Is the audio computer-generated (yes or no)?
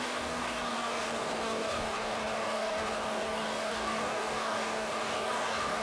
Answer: yes